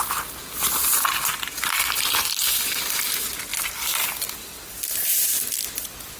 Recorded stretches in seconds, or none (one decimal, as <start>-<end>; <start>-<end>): 0.0-3.5; 4.1-6.2

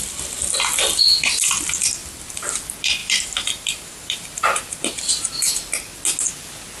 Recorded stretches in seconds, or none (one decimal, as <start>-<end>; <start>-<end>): 0.0-2.0; 2.6-3.0; 5.1-6.8